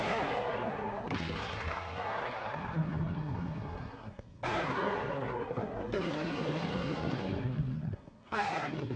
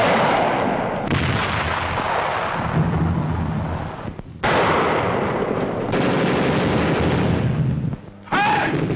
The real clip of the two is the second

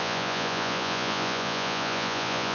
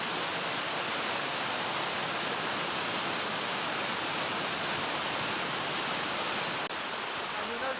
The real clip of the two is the second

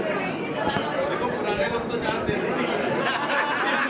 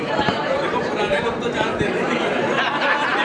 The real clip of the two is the first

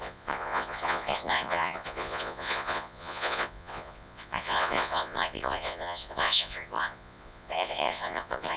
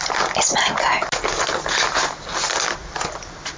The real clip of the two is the second